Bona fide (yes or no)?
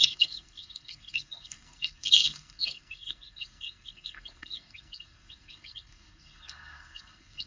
no